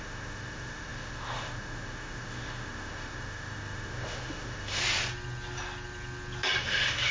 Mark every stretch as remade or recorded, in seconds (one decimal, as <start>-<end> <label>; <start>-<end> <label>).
0.0-4.8 remade; 4.8-6.6 recorded; 6.6-7.1 remade